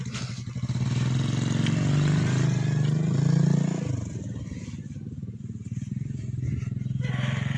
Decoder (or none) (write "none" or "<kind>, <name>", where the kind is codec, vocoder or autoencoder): none